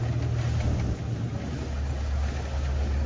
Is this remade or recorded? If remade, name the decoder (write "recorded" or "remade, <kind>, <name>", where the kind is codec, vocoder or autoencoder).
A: recorded